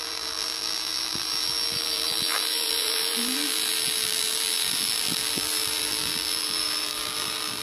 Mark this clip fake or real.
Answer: fake